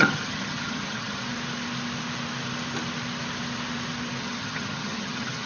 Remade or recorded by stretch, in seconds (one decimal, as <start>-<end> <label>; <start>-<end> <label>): 0.0-1.2 remade; 1.2-4.2 recorded; 4.2-5.5 remade